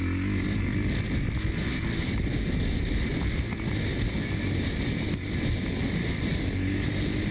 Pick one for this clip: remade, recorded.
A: recorded